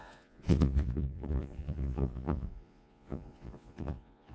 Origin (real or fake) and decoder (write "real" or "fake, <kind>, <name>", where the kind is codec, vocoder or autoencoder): fake, vocoder, Vocos